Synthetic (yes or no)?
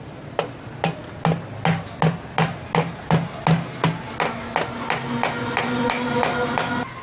no